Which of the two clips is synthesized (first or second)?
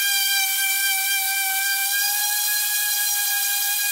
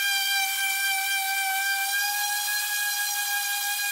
first